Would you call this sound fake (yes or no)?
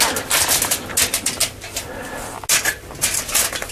no